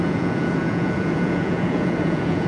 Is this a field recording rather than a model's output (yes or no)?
no